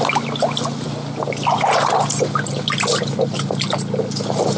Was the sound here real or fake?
real